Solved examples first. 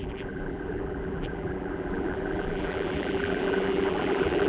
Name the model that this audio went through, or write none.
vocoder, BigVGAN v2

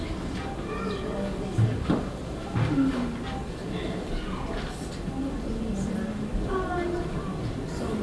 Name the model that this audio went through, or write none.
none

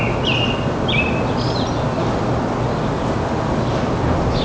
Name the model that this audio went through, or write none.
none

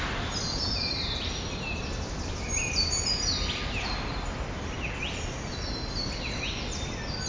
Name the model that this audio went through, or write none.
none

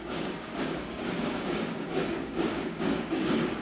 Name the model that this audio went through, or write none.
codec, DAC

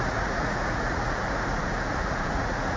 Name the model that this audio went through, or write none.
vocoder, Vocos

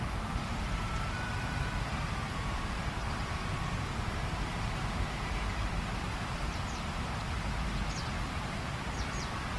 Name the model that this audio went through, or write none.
vocoder, BigVGAN v2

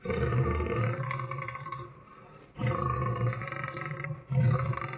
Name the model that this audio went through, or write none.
vocoder, BigVGAN v2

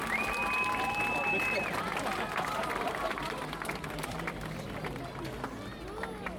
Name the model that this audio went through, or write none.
none